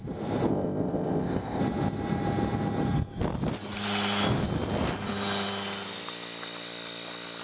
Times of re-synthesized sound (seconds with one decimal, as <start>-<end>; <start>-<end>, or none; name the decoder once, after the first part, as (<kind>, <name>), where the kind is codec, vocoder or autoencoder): 0.5-1.6 (codec, ZipCodec)